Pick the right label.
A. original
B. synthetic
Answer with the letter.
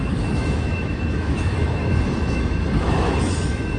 B